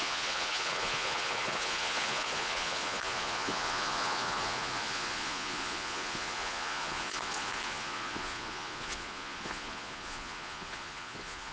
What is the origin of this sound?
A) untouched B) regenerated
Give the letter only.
B